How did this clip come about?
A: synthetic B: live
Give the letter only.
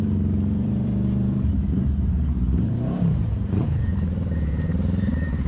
A